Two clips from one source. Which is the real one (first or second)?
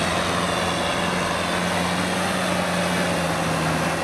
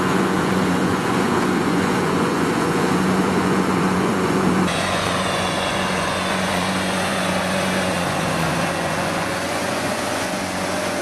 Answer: first